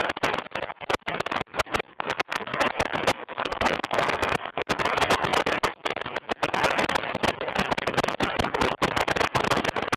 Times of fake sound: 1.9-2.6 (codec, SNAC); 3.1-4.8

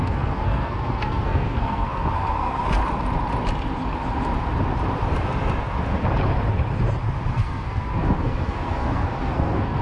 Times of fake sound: 0.0-2.8 (codec, SNAC); 7.3-9.8

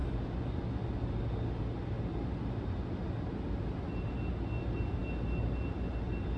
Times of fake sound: none